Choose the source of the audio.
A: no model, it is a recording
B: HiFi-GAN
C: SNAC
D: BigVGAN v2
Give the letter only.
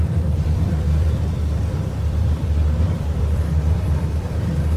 D